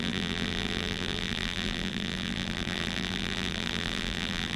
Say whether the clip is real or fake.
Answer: fake